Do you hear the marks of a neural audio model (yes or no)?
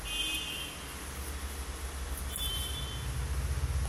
no